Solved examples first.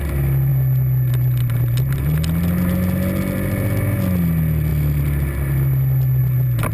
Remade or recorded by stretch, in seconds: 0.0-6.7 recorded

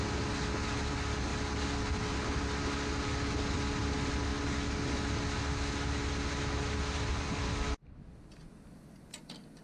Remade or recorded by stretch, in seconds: 0.0-9.6 recorded

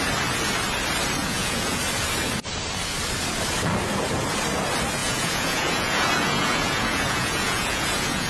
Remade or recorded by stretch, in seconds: 0.0-1.2 recorded; 1.2-1.8 remade; 1.8-5.0 recorded; 5.0-8.3 remade